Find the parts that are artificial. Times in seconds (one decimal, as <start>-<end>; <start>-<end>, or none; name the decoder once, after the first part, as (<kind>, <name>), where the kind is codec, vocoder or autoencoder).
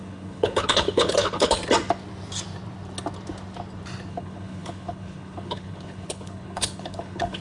0.0-1.6 (codec, HILCodec); 4.1-7.4